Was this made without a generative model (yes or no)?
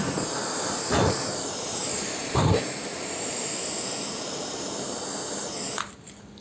no